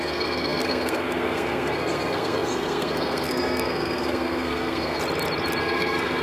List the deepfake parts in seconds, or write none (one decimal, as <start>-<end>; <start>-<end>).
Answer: 0.0-5.0; 5.6-6.2